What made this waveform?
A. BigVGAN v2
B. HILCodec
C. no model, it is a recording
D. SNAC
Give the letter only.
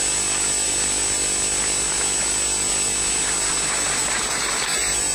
C